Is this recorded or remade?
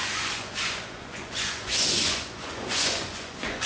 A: remade